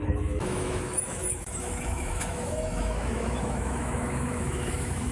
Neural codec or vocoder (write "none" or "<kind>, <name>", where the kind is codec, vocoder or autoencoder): autoencoder, DAC-VAE